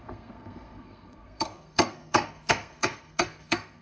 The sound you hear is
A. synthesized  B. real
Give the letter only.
A